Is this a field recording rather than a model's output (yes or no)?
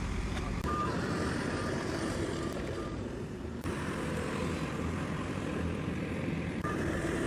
no